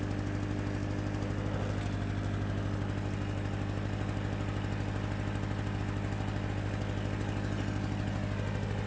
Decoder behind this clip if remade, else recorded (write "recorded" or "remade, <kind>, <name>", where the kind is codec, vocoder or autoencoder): recorded